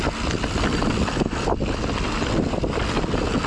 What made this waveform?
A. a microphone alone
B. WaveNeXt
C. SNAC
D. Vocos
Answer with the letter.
A